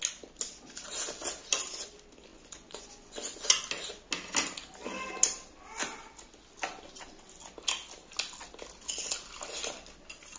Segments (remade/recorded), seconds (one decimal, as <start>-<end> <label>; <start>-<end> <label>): 0.0-2.3 recorded; 2.3-3.6 remade; 3.6-10.4 recorded